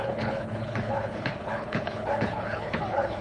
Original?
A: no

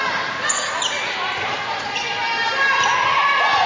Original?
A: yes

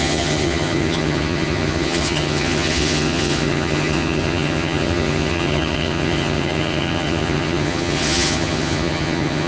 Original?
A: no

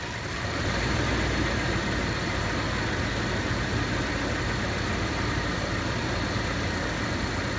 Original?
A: yes